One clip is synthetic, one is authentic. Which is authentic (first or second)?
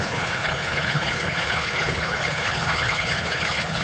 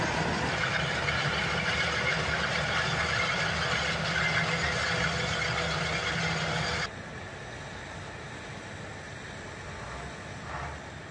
second